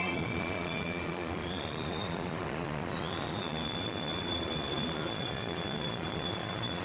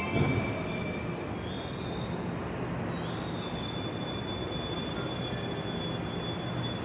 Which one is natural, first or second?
second